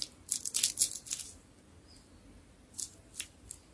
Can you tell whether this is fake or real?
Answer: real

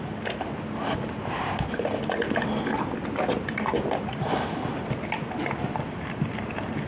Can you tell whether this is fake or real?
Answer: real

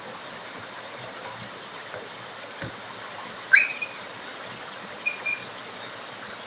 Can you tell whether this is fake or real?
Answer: real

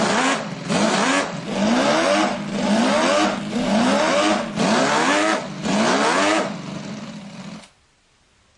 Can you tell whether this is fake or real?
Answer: real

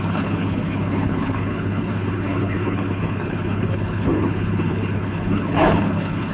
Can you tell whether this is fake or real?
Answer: fake